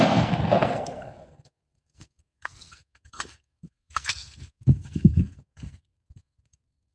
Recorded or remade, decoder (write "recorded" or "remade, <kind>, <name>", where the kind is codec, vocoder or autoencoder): remade, codec, SNAC